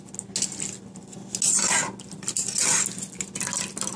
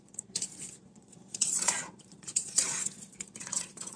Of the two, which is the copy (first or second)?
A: second